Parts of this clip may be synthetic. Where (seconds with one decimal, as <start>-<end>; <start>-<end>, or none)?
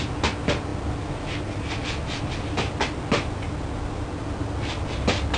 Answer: none